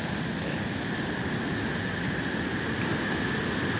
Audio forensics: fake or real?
real